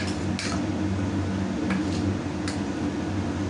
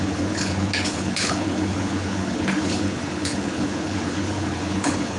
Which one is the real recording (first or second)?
first